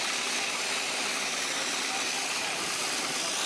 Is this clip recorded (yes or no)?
yes